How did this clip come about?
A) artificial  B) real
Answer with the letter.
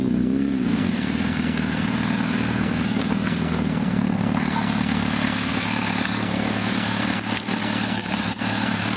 A